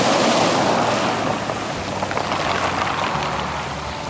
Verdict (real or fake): real